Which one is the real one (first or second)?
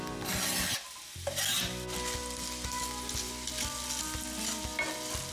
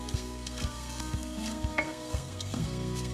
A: first